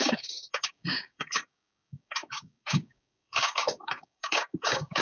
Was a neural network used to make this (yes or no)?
yes